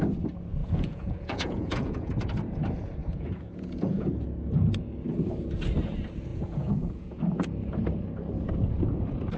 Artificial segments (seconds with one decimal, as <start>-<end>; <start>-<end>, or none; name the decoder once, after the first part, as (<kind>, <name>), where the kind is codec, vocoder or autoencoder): 0.6-2.1 (vocoder, Vocos); 3.0-4.1; 6.3-7.2